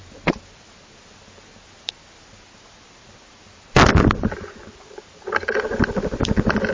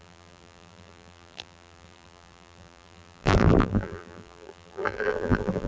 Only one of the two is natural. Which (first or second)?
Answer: first